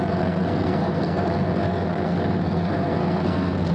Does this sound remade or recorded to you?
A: remade